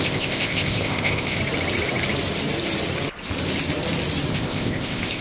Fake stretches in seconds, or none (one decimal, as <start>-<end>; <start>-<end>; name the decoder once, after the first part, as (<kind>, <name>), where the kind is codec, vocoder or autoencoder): 0.0-1.4 (codec, ZipCodec); 4.3-5.2